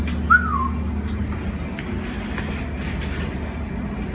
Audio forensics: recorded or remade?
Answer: recorded